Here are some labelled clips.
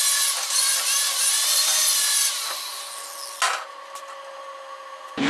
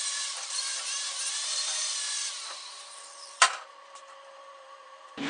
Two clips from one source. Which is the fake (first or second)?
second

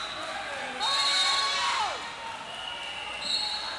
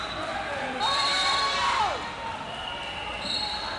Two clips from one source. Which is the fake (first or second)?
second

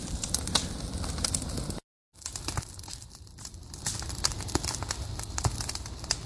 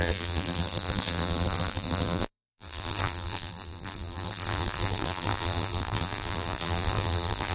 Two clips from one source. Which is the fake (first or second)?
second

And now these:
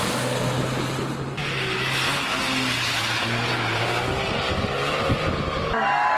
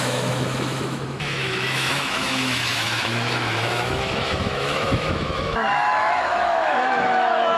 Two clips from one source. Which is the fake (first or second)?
second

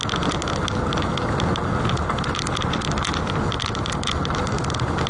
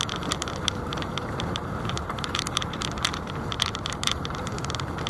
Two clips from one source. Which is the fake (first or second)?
second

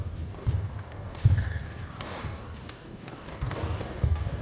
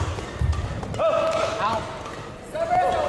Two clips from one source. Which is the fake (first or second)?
first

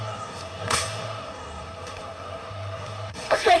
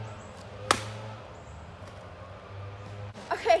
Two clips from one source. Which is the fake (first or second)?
first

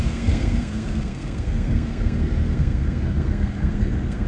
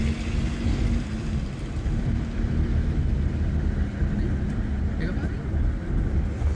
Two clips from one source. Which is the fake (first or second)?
first